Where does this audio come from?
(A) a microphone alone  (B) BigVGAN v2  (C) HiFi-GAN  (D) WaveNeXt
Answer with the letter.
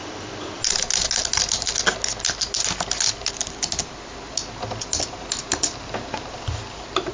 A